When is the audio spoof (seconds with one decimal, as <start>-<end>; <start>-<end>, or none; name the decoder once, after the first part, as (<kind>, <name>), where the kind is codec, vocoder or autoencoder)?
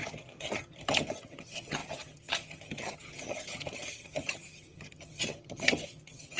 0.0-6.4 (vocoder, HiFi-GAN)